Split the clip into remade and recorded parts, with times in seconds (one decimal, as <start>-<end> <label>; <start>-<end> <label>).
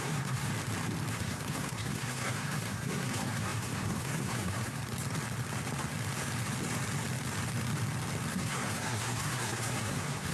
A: 0.0-0.5 remade; 0.5-1.1 recorded; 1.1-4.8 remade; 4.8-8.3 recorded; 8.3-10.3 remade